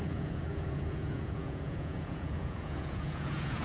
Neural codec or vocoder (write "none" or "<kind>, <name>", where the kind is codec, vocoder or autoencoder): vocoder, Vocos